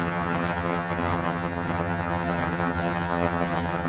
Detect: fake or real fake